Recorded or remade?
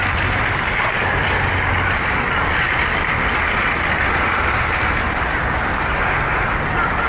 recorded